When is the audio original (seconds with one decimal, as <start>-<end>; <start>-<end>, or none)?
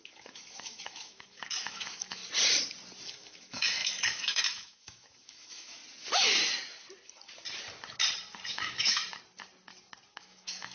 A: 2.2-3.0; 5.8-8.5; 9.0-10.1